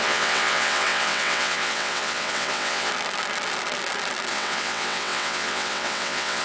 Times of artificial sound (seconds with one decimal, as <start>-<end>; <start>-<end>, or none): 0.0-2.9; 4.3-6.4